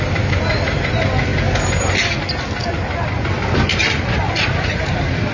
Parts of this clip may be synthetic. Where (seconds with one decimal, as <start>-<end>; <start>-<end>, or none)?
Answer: none